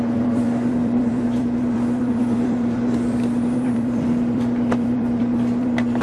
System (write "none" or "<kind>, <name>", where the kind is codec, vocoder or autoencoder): vocoder, BigVGAN v2